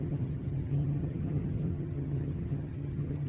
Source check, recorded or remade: remade